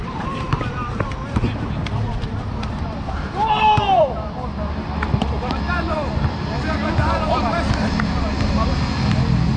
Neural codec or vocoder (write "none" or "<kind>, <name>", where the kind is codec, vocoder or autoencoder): vocoder, BigVGAN v2